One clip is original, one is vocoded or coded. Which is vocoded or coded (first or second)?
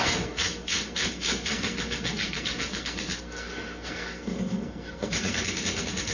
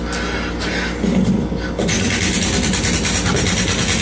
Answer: first